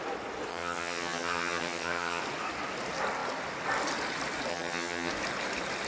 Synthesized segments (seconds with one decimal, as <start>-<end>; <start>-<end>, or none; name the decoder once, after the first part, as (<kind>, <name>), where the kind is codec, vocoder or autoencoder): 0.5-2.2 (vocoder, HiFi-GAN); 4.5-5.1